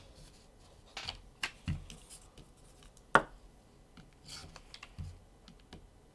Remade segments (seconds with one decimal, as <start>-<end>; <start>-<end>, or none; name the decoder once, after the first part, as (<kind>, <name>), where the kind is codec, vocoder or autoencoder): none

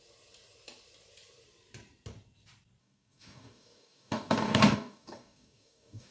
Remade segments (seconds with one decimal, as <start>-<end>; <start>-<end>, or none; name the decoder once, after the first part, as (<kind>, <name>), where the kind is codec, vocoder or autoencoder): 2.8-6.1 (codec, DAC)

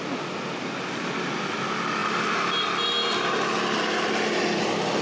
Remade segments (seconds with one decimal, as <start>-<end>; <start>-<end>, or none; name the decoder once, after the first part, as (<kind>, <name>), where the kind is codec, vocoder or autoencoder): none

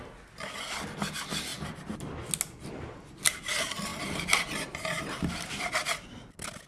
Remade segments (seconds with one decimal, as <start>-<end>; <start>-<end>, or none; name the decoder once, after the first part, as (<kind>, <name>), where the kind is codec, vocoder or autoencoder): 3.9-5.5 (vocoder, BigVGAN v2)

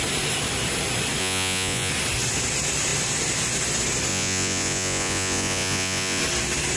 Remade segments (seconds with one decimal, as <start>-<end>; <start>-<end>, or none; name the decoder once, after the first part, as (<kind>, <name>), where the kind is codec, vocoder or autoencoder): 1.2-1.9 (vocoder, Vocos); 4.1-6.2

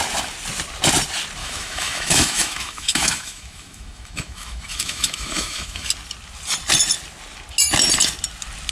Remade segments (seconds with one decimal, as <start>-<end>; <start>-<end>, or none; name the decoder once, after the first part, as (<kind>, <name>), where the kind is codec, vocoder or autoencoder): 1.4-5.9 (autoencoder, DAC-VAE)

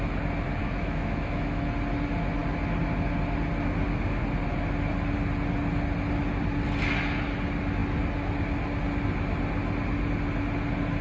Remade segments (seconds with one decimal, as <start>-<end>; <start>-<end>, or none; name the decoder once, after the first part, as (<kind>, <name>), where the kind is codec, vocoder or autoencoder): 0.6-1.6 (autoencoder, DAC-VAE)

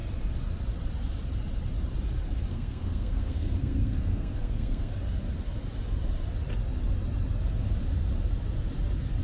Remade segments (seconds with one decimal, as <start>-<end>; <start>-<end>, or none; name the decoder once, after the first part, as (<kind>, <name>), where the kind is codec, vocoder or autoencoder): 2.5-4.9 (codec, SNAC)